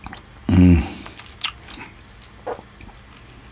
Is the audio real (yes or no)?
yes